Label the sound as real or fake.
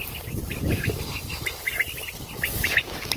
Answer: real